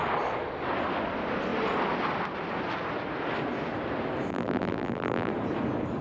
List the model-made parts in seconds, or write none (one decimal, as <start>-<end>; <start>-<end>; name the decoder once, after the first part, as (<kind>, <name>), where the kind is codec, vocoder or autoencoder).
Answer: 4.3-5.3 (vocoder, BigVGAN v2)